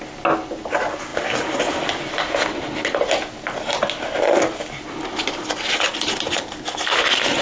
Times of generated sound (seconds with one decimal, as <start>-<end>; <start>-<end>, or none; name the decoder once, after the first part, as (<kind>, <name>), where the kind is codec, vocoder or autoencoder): none

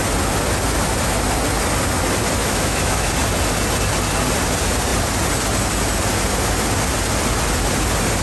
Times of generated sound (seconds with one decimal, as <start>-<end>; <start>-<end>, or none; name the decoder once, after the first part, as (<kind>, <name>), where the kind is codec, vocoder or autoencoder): 2.4-3.1 (autoencoder, DAC-VAE)

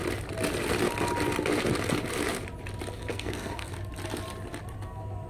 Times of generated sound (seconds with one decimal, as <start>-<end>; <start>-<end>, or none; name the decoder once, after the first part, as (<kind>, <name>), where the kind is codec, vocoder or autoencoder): 3.1-3.7 (codec, SNAC)